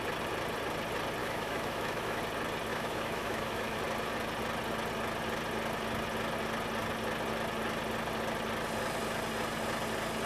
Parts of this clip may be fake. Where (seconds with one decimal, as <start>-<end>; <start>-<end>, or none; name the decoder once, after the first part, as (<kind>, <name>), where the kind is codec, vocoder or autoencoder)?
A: 1.2-2.2 (autoencoder, DAC-VAE); 2.7-3.8